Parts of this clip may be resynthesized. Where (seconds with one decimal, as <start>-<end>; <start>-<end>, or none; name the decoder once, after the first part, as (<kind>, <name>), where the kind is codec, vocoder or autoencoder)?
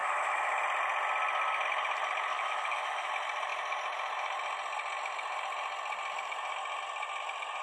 0.0-0.6 (autoencoder, DAC-VAE); 2.3-3.1